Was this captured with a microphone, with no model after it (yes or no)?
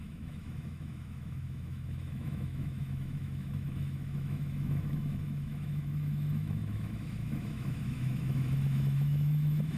no